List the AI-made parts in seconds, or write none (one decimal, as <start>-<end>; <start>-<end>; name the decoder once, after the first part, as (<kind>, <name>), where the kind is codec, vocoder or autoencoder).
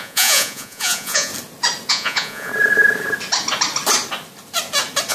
0.0-1.3 (vocoder, Vocos); 1.9-2.5